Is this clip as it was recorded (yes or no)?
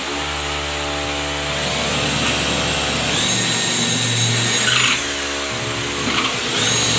yes